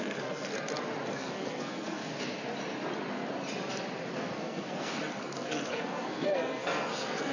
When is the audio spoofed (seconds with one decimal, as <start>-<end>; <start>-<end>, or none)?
0.0-0.5; 1.1-2.1; 4.1-7.3